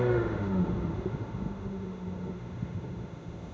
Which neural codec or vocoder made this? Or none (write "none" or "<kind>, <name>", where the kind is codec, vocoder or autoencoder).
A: autoencoder, DAC-VAE